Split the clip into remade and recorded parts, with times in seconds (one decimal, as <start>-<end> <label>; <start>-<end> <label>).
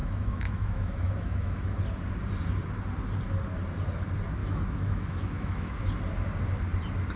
0.0-1.8 remade; 1.8-4.4 recorded; 4.4-5.8 remade; 5.8-7.2 recorded